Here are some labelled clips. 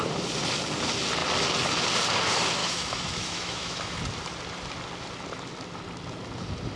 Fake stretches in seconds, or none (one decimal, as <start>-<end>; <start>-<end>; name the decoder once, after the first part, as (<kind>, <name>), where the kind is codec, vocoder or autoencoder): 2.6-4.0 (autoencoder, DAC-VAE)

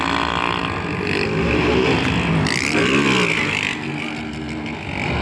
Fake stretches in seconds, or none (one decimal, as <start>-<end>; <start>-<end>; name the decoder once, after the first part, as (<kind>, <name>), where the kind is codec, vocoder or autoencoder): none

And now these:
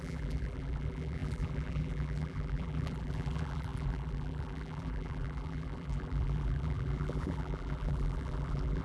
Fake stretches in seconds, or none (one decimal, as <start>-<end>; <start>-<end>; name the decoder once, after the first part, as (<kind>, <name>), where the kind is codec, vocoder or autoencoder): 0.0-8.8 (vocoder, BigVGAN v2)

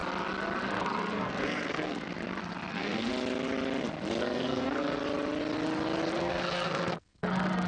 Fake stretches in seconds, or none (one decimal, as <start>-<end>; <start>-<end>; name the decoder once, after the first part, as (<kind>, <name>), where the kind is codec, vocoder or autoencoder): 0.6-2.1 (codec, SNAC); 2.7-3.1; 4.2-5.0; 6.1-7.7

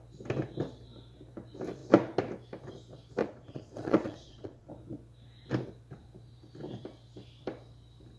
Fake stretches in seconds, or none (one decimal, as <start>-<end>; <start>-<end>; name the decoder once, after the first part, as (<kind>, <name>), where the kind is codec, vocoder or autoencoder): 3.2-4.7 (vocoder, Vocos)

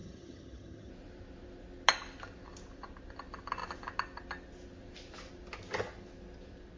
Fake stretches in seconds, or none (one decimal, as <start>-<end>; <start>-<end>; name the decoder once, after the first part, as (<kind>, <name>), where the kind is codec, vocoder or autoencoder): 0.0-0.9 (vocoder, HiFi-GAN)